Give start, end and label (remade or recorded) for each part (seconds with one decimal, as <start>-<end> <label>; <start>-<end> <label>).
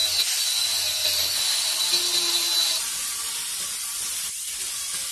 0.0-5.1 recorded